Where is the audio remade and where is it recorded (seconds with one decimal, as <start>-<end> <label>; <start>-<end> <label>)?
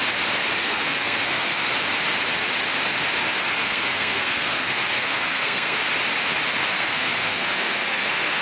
0.0-0.6 recorded; 0.6-1.7 remade; 1.7-3.2 recorded; 3.2-5.8 remade; 5.8-6.7 recorded; 6.7-8.4 remade